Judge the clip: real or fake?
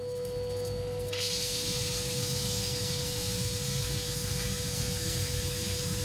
fake